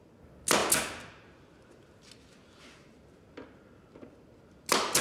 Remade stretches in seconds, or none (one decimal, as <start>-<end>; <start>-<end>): none